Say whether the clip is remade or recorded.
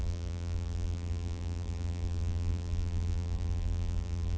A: remade